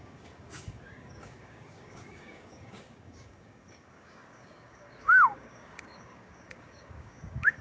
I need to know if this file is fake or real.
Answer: fake